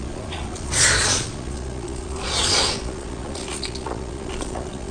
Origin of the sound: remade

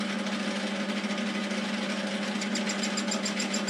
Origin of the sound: recorded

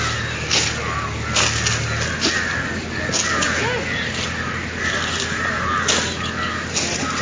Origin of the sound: recorded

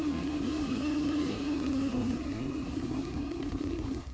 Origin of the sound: remade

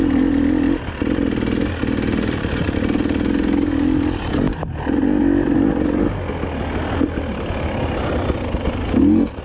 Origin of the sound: recorded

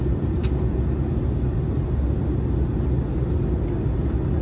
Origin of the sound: recorded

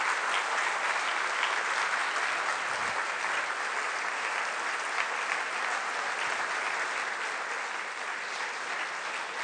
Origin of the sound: recorded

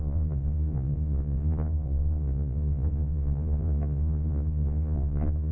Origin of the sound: remade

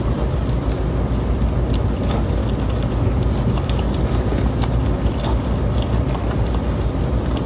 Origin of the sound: recorded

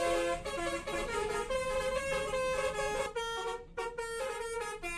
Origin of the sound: recorded